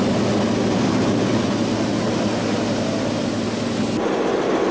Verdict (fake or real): real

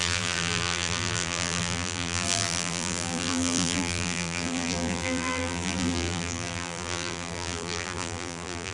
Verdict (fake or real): fake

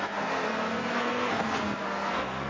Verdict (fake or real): fake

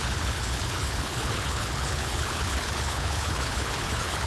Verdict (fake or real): fake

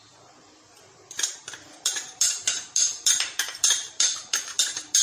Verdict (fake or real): fake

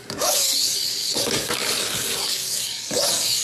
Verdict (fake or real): fake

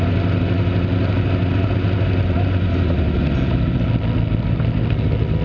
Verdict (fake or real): real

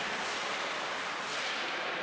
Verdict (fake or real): real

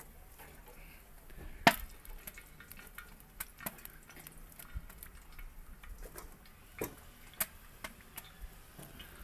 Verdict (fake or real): real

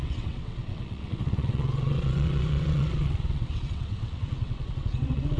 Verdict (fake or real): fake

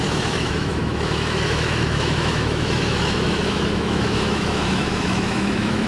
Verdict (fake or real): fake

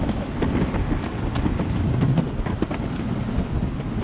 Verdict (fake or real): real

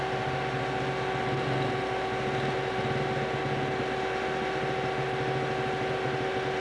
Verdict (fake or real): real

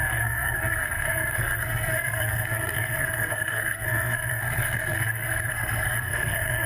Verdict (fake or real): fake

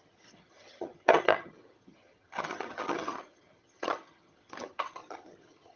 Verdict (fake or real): fake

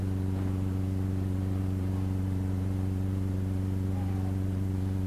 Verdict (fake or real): fake